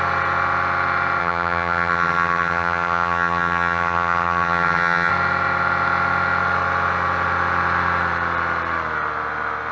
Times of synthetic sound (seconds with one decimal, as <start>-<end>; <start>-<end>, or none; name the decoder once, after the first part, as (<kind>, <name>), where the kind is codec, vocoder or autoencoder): 1.2-5.1 (vocoder, HiFi-GAN)